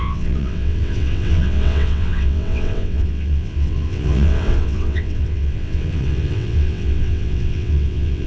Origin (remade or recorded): remade